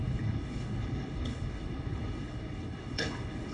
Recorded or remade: remade